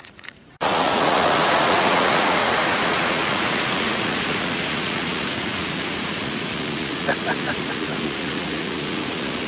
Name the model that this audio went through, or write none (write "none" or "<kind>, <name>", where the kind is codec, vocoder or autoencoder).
vocoder, Vocos